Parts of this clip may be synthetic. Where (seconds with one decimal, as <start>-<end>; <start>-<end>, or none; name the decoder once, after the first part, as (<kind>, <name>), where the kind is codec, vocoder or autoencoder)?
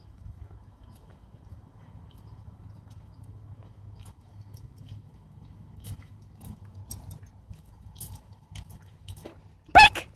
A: 0.0-6.8 (autoencoder, DAC-VAE); 7.4-9.3